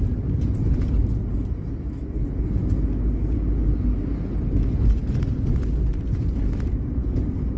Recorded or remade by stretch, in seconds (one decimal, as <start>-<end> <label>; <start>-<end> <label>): 0.0-7.6 recorded